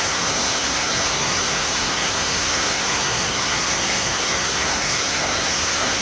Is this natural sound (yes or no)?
no